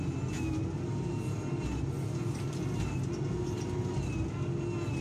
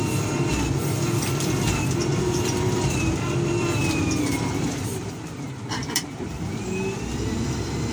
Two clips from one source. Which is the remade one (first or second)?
second